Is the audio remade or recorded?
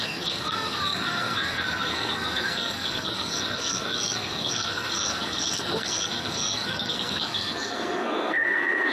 remade